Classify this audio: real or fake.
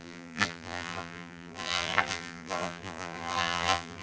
fake